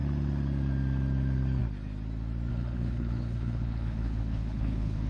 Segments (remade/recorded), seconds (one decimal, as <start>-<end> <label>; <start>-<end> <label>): 0.0-2.5 recorded; 2.5-5.1 remade

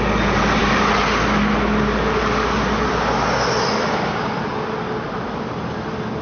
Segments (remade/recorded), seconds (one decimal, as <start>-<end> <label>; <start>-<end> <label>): 0.0-6.2 recorded